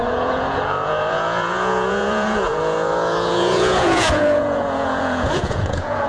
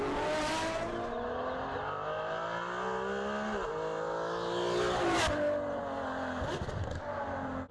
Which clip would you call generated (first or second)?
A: first